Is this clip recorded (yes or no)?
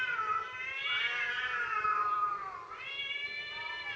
yes